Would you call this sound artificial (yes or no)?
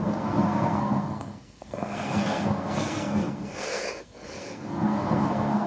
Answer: yes